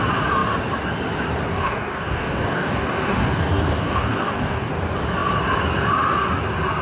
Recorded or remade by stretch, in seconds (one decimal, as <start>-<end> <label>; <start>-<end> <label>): 0.0-1.5 recorded; 1.5-4.7 remade; 4.7-6.8 recorded